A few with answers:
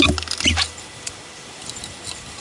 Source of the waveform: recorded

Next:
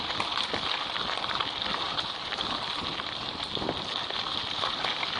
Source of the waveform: recorded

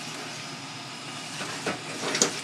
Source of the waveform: recorded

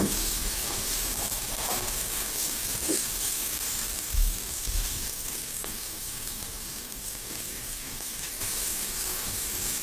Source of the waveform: remade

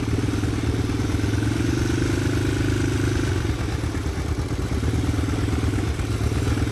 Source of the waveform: recorded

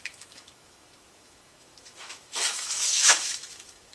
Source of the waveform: remade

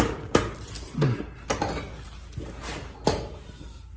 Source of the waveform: recorded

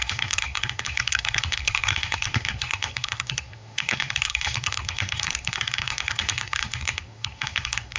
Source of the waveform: remade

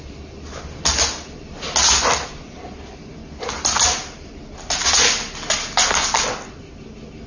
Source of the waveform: recorded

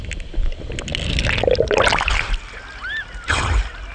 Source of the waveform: recorded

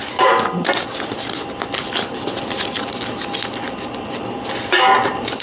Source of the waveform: recorded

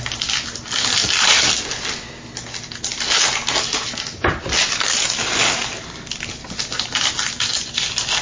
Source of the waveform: recorded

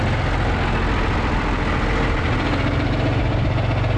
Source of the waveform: recorded